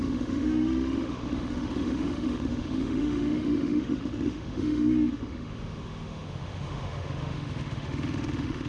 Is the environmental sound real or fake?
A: fake